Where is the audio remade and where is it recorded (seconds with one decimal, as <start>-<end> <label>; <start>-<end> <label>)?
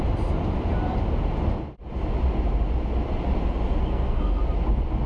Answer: 0.0-3.8 recorded; 3.8-4.4 remade; 4.4-5.1 recorded